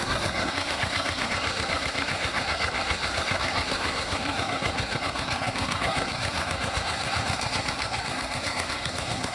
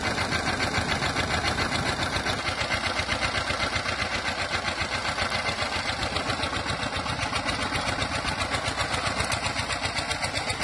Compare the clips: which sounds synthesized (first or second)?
first